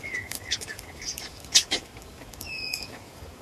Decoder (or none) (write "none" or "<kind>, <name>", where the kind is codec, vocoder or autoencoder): codec, DAC